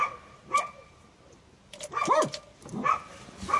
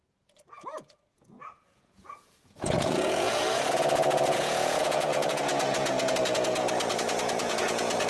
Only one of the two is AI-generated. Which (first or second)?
second